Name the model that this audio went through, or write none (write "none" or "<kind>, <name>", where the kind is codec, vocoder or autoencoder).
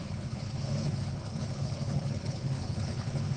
codec, HILCodec